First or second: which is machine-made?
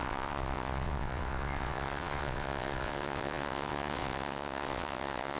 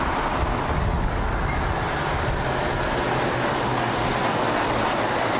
first